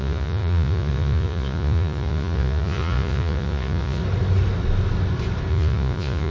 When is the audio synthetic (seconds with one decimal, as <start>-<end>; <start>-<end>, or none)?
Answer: 0.0-4.0; 5.5-6.3